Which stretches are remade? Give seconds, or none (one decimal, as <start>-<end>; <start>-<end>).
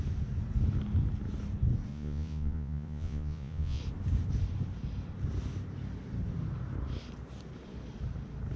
1.9-3.8